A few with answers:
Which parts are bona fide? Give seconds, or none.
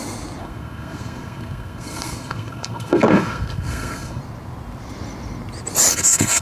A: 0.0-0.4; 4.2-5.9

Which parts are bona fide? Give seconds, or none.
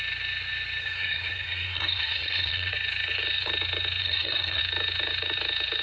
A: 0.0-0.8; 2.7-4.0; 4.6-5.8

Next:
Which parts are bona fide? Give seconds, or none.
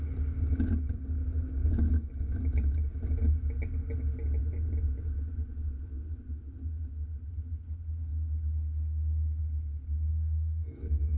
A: 0.0-10.1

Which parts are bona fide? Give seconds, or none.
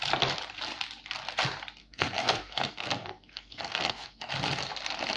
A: 0.0-1.8; 4.3-5.2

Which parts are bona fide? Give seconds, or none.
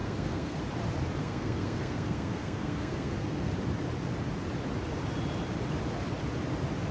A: 0.6-1.2; 3.5-6.9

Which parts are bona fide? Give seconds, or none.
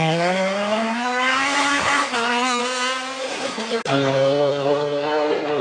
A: 2.6-3.2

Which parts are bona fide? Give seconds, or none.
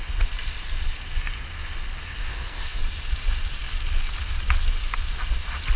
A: 0.0-2.2; 2.8-5.8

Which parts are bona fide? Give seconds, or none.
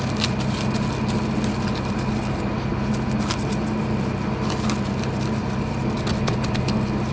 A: 0.0-7.1